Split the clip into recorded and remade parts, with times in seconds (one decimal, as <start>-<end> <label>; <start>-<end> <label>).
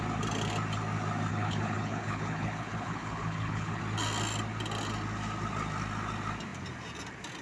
0.0-1.3 recorded; 1.3-3.8 remade; 3.8-7.4 recorded